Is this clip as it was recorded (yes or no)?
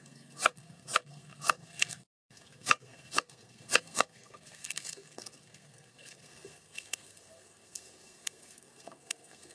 no